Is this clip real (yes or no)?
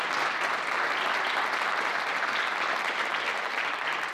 yes